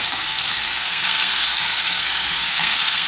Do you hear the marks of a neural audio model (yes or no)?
yes